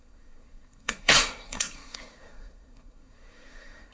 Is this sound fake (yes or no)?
yes